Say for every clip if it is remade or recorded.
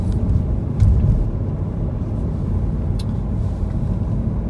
recorded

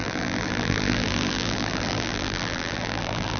remade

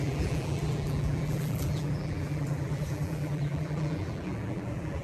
remade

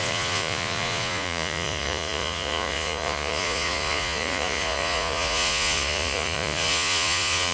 remade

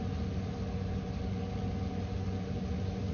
recorded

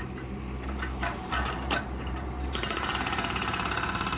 remade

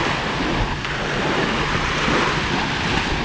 recorded